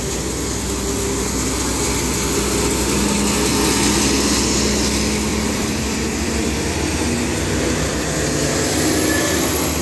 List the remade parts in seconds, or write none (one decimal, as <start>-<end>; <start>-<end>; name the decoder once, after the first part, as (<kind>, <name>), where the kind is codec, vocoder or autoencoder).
5.3-7.0 (vocoder, BigVGAN v2)